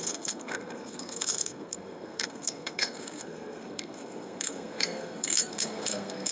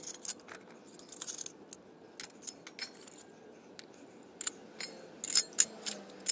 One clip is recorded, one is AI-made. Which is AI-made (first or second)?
first